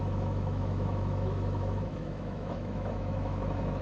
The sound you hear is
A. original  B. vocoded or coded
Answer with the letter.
B